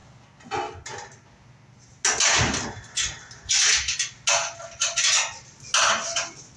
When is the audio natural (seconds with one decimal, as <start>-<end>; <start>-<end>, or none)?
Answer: 0.0-6.6